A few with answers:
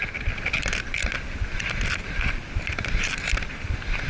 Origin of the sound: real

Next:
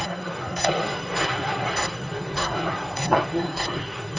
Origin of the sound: fake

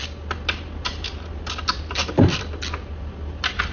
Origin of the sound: real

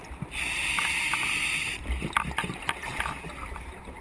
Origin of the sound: real